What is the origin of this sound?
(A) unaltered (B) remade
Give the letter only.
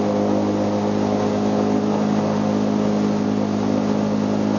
A